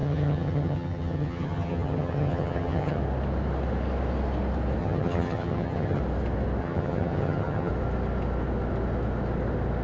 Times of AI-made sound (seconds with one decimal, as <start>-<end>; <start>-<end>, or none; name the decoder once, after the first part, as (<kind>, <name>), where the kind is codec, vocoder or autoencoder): 0.0-3.0 (vocoder, HiFi-GAN); 4.8-6.0; 6.6-7.7

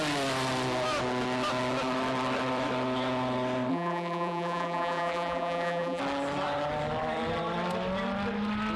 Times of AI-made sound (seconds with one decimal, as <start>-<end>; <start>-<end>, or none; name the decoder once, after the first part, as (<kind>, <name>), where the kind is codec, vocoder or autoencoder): 3.7-6.0 (vocoder, BigVGAN v2)

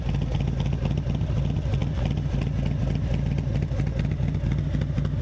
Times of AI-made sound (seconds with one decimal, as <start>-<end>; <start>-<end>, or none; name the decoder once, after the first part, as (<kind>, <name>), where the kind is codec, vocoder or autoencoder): none

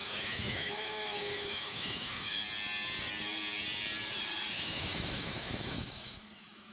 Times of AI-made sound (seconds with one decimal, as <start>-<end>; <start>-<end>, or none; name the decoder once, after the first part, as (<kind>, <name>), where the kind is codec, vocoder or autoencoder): 0.0-2.4 (autoencoder, DAC-VAE); 4.5-6.7

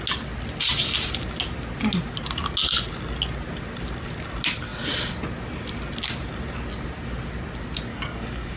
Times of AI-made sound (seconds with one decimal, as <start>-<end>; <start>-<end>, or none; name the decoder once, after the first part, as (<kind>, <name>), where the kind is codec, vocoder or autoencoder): 7.9-8.6 (codec, DAC)